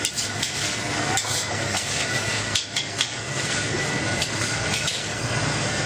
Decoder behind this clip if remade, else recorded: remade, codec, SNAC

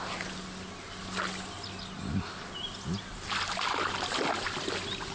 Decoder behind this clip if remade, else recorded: recorded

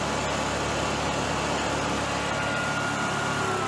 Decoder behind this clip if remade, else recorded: recorded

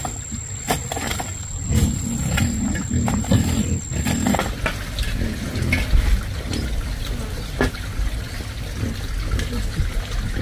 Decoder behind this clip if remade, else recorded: recorded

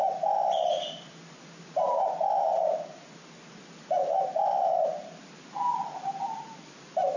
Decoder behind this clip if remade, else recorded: recorded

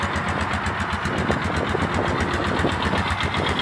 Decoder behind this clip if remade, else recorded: recorded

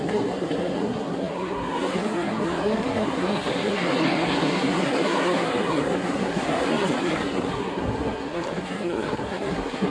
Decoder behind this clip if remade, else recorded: remade, codec, SNAC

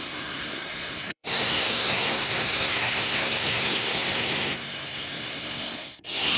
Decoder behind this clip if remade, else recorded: remade, codec, SNAC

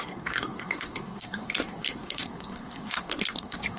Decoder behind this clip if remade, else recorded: remade, codec, SNAC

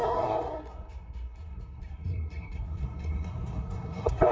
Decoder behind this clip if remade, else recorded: remade, codec, SNAC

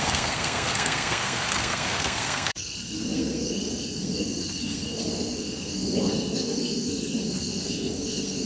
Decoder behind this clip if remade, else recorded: remade, codec, SNAC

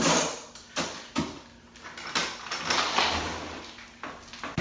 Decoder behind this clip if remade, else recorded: recorded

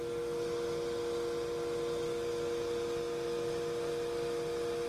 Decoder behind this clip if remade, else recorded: recorded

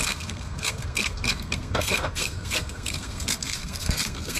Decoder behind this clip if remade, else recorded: remade, codec, SNAC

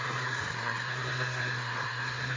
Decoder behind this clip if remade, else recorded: remade, codec, SNAC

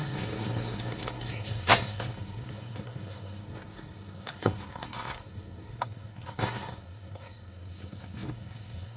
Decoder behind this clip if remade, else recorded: remade, codec, SNAC